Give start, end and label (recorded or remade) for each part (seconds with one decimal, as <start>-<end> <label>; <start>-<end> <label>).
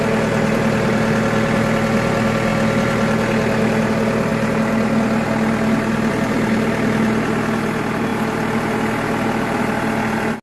0.0-10.4 recorded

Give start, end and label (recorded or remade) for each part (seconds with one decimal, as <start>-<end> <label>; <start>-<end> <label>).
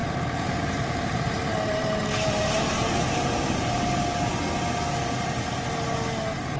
0.0-4.0 remade; 4.0-6.6 recorded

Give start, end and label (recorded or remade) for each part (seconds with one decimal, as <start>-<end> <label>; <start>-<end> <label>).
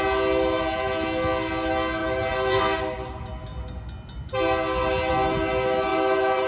0.0-2.0 recorded; 2.0-2.6 remade; 2.6-5.9 recorded; 5.9-6.5 remade